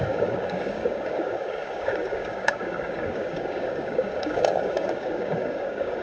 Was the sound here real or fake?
fake